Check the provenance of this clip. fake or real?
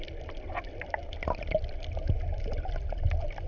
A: real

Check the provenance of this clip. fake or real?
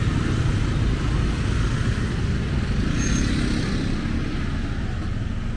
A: real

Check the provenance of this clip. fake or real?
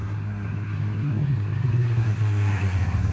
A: fake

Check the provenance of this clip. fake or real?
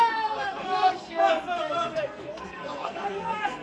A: fake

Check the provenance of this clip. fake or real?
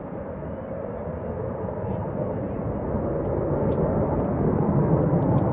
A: real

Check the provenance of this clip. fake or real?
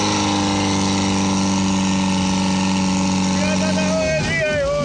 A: real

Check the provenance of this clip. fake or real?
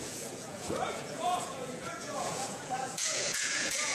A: fake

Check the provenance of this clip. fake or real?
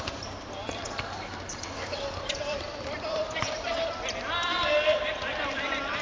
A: fake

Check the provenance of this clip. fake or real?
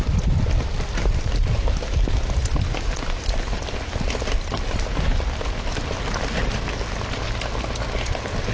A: real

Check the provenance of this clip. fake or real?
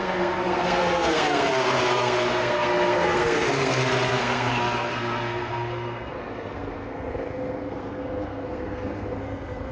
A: fake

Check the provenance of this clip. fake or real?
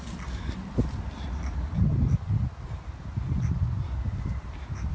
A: real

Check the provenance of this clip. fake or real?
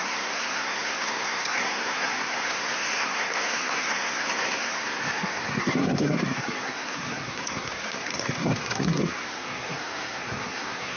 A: fake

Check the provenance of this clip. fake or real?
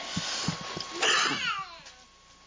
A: real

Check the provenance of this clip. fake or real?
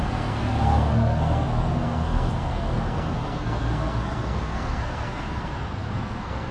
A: fake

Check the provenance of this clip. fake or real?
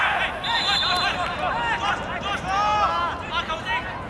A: real